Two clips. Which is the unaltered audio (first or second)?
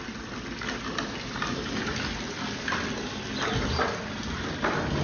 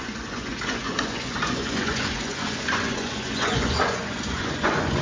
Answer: first